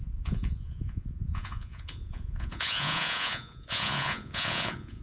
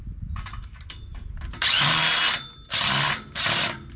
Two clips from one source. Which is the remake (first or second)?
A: first